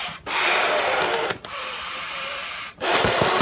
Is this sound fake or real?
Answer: fake